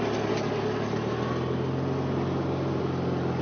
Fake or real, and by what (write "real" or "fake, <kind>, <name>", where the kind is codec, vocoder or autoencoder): real